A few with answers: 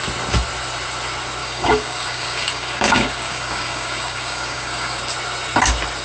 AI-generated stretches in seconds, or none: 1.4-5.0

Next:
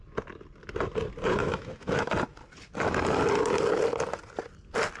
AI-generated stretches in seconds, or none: 1.4-2.1